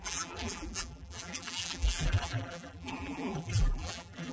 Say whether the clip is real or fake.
fake